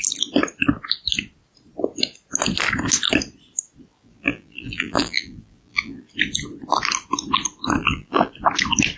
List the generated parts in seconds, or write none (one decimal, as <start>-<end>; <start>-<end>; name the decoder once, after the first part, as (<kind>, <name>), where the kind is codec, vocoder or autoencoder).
3.9-6.1 (vocoder, BigVGAN v2); 7.8-8.3

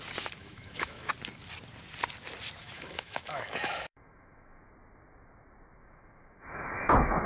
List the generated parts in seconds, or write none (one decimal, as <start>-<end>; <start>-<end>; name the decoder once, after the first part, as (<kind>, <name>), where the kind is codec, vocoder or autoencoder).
0.4-1.1 (autoencoder, DAC-VAE); 2.6-4.7; 5.8-7.3

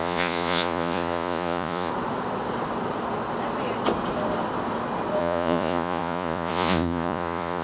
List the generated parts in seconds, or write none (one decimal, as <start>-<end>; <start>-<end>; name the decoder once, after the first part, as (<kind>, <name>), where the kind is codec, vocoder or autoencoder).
0.0-1.9 (vocoder, Vocos); 5.2-7.6

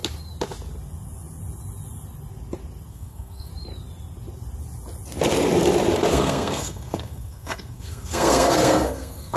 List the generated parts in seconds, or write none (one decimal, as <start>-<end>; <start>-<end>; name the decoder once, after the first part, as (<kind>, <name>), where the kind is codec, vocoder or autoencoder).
2.9-3.5 (codec, SNAC); 6.1-9.4

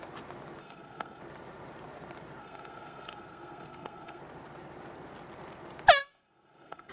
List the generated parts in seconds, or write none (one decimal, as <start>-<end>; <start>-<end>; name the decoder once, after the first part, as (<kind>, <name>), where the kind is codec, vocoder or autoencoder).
0.6-1.2 (codec, SNAC); 2.4-4.2; 6.0-6.9

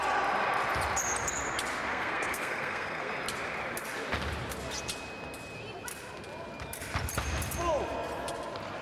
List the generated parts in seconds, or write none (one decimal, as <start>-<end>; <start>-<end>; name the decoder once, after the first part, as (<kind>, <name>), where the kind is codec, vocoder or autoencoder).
1.9-3.1 (codec, SNAC)